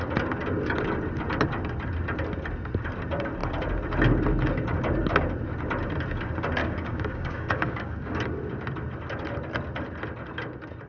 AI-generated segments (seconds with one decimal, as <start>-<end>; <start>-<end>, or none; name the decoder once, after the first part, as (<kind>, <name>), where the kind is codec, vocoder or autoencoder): 6.6-8.2 (codec, DAC)